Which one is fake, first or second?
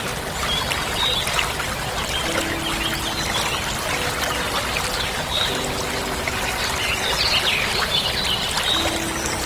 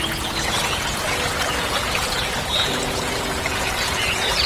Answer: second